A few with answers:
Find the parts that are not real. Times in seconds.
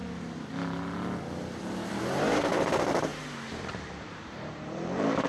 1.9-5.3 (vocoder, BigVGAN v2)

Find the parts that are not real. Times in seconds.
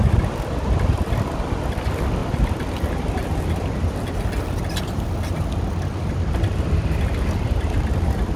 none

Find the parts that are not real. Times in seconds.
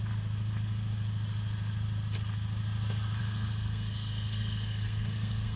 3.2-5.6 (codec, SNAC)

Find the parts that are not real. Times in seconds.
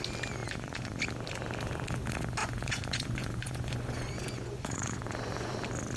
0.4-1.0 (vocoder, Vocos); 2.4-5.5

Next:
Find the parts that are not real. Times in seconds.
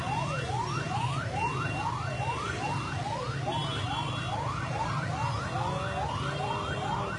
none